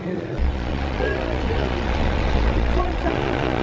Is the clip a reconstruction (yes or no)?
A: yes